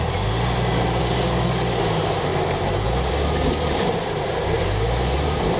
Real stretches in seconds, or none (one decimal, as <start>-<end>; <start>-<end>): 0.0-1.0; 1.8-5.6